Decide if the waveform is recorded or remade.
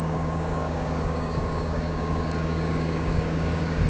remade